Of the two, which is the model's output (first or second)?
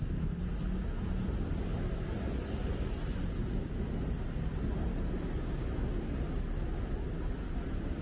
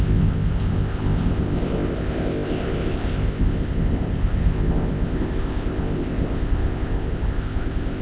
second